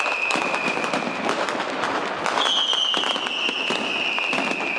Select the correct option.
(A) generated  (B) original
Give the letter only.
B